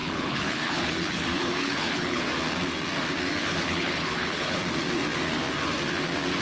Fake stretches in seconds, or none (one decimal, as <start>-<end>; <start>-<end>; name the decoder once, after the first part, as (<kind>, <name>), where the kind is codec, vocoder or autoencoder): 0.0-2.2 (codec, HILCodec); 3.4-4.6